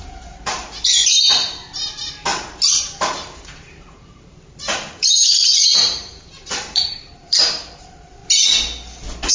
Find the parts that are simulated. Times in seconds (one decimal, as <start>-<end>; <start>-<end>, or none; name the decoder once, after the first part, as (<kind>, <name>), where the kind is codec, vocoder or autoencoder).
0.0-8.2 (vocoder, BigVGAN v2)